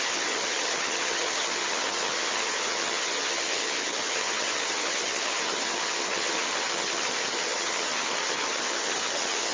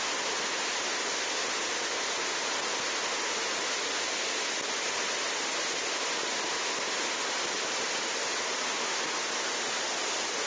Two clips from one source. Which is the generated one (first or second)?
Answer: first